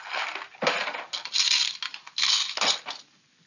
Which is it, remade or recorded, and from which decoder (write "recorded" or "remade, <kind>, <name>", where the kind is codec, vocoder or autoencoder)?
recorded